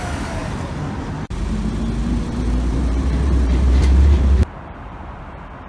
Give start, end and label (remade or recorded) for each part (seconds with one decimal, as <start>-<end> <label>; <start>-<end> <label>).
0.0-2.0 recorded; 2.0-5.3 remade; 5.3-5.7 recorded